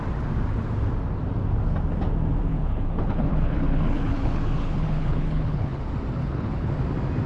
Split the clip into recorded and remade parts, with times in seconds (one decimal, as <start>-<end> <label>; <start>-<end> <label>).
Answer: 0.0-2.5 recorded; 2.5-5.8 remade; 5.8-6.2 recorded; 6.2-6.7 remade; 6.7-7.3 recorded